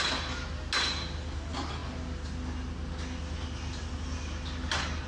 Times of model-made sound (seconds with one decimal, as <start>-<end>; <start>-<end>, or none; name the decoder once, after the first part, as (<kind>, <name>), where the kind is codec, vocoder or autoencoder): none